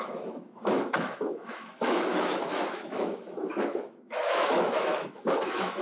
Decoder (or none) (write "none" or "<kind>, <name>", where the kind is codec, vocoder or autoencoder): autoencoder, DAC-VAE